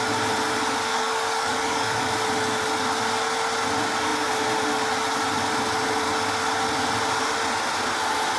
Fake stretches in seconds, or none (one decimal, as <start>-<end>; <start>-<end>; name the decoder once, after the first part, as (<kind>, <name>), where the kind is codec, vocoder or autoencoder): 0.9-2.0 (codec, DAC)